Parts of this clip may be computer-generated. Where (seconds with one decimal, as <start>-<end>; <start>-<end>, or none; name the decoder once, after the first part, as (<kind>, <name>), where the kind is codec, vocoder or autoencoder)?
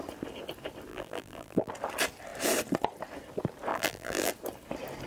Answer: 0.9-1.7 (vocoder, BigVGAN v2); 3.7-4.3